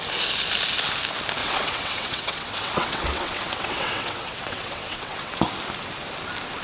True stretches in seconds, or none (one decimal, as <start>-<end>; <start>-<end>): 0.0-1.4; 5.4-6.6

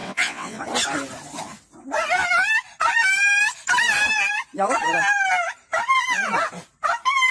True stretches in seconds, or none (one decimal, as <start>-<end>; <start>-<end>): 0.6-7.3

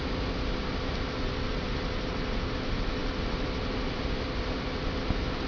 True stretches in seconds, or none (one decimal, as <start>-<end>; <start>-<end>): 0.0-5.5

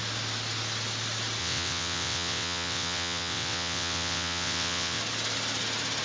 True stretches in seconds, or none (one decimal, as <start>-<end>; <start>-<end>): 0.0-1.4; 5.0-6.0

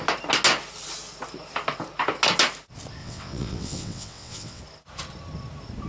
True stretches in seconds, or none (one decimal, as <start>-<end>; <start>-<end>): 0.0-3.0; 4.6-5.9

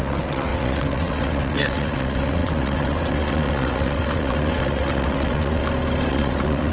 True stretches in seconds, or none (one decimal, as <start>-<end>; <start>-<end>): 5.6-6.1

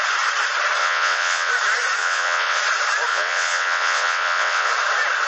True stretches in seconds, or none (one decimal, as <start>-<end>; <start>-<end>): 0.0-0.8; 1.5-2.0; 2.6-3.1; 4.7-5.3

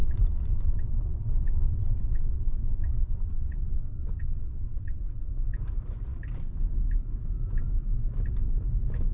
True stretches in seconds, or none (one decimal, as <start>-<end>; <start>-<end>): 5.3-9.1